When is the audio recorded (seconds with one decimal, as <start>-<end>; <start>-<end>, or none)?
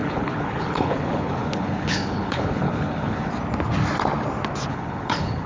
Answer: 3.3-4.7